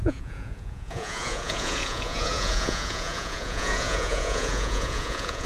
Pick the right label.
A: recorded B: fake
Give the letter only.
B